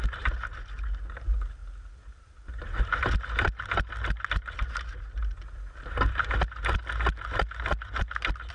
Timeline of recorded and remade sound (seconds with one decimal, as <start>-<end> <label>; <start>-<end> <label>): 0.0-8.5 recorded